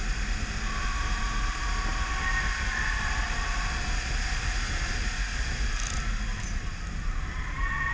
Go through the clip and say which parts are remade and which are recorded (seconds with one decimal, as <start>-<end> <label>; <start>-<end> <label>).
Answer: 0.0-7.9 recorded